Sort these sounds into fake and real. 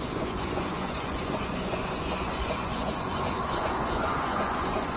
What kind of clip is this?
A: fake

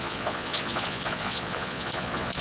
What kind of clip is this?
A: fake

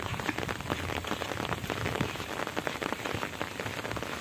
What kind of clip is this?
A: real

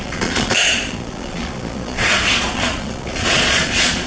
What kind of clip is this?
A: fake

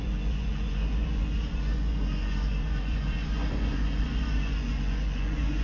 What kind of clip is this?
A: fake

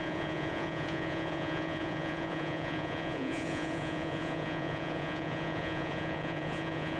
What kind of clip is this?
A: fake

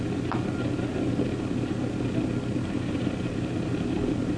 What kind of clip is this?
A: real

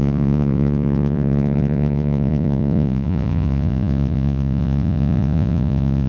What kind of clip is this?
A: fake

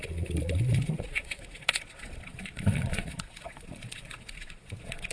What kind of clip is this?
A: fake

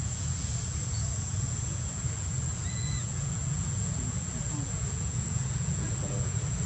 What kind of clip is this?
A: fake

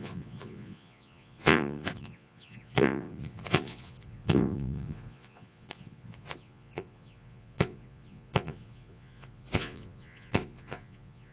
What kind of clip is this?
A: fake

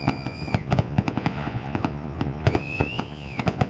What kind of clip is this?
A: fake